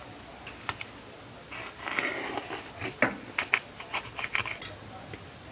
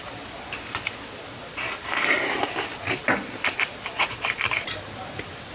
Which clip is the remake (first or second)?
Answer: second